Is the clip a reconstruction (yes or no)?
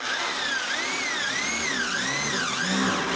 no